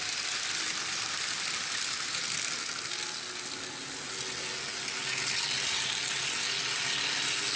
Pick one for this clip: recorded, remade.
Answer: recorded